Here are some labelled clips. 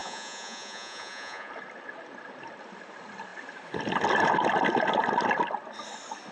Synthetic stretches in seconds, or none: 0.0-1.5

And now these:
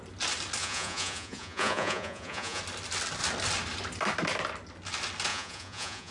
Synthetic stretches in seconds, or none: 0.6-2.6; 5.3-6.1